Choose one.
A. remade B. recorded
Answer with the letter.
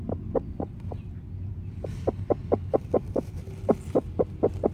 B